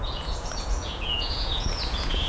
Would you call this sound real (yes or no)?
no